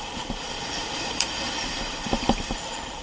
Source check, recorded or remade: remade